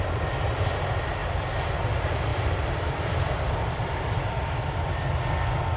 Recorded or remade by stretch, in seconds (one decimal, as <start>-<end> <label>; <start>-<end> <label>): 0.0-1.2 recorded; 1.2-1.9 remade; 1.9-2.3 recorded; 2.3-5.1 remade; 5.1-5.8 recorded